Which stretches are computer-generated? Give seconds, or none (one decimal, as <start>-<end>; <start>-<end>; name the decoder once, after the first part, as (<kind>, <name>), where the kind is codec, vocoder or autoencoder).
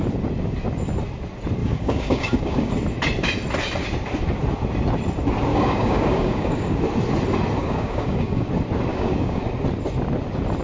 1.6-2.7 (codec, DAC); 5.5-6.8; 7.6-8.5; 8.9-9.4